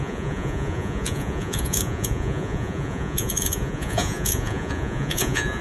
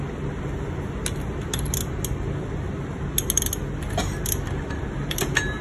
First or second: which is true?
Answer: second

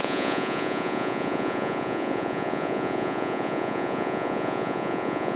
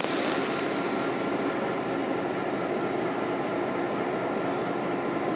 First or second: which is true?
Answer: second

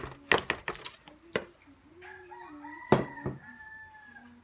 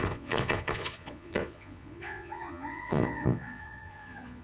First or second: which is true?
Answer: first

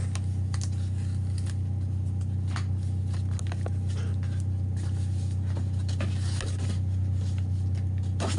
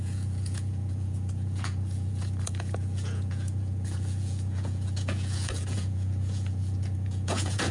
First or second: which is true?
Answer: first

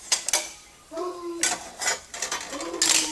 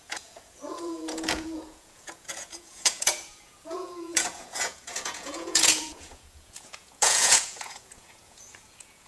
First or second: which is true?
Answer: first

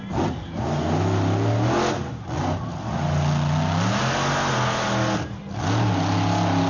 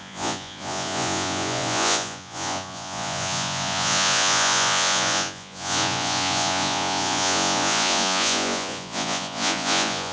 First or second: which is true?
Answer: first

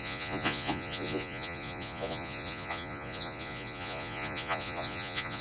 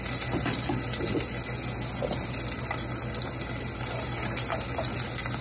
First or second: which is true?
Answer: second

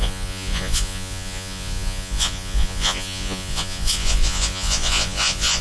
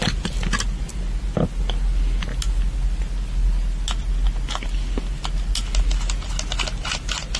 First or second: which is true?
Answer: second